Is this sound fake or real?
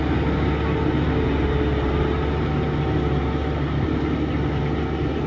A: real